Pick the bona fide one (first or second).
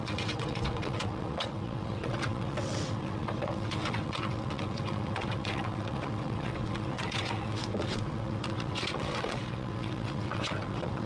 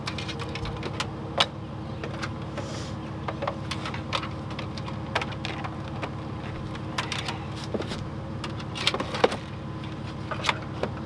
second